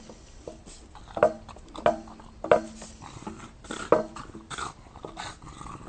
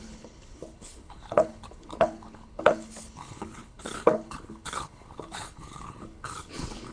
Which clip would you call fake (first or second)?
second